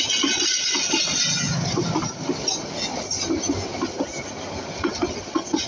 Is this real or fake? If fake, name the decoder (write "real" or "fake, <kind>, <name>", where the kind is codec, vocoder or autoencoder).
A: real